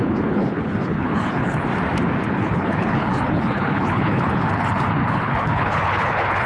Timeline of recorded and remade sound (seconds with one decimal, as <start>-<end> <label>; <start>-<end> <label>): 0.0-1.7 remade; 1.7-2.3 recorded; 2.3-6.5 remade